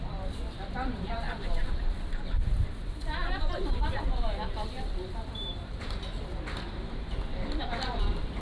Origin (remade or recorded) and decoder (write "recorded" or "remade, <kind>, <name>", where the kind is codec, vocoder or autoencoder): remade, vocoder, BigVGAN v2